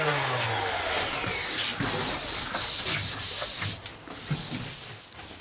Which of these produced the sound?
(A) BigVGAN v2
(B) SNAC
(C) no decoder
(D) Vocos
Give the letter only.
C